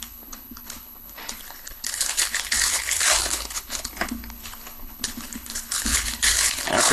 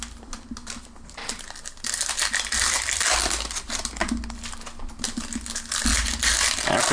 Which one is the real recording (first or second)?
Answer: second